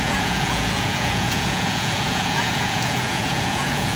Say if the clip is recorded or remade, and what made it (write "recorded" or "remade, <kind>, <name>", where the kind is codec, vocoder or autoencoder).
remade, vocoder, Vocos